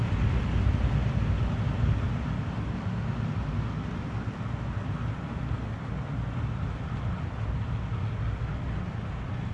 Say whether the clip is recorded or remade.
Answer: recorded